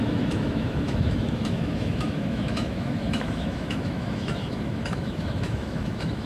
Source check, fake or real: fake